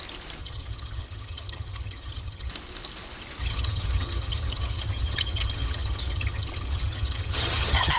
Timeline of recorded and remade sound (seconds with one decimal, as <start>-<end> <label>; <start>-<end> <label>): 0.0-0.4 recorded; 0.4-2.5 remade; 2.5-3.4 recorded; 3.4-8.0 remade